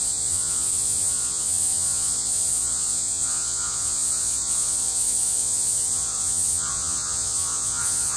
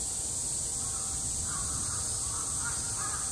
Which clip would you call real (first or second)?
second